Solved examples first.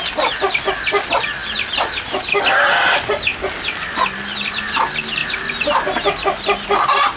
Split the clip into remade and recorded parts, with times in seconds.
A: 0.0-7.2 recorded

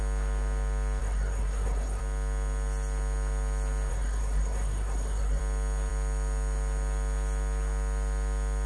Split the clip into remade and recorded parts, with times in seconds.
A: 0.0-1.0 recorded; 1.0-2.0 remade; 2.0-3.9 recorded; 3.9-5.4 remade; 5.4-8.7 recorded

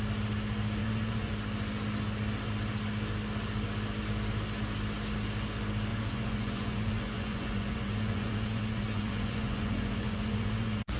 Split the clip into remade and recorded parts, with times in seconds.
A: 0.0-0.8 recorded; 0.8-1.3 remade; 1.3-5.9 recorded; 5.9-11.0 remade

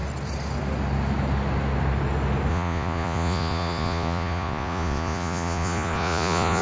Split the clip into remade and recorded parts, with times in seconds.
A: 0.0-2.5 recorded; 2.5-6.6 remade

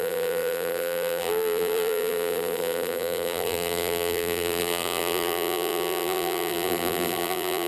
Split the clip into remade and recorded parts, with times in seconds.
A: 0.0-7.7 remade

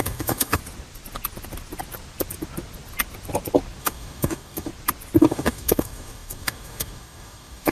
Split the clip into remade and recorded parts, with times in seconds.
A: 0.0-0.6 remade; 0.6-3.8 recorded; 3.8-4.7 remade; 4.7-5.2 recorded; 5.2-7.7 remade

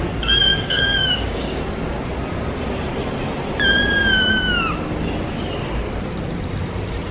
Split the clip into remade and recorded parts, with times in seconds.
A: 0.0-0.4 recorded; 0.4-1.6 remade; 1.6-7.1 recorded